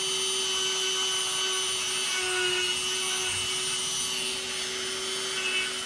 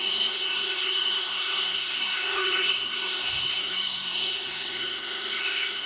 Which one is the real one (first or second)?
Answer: first